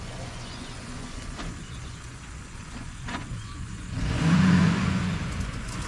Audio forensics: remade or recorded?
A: remade